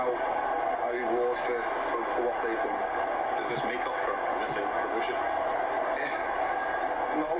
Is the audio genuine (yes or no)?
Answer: yes